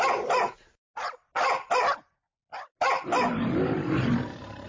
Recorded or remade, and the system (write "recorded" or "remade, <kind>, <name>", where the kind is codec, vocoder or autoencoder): recorded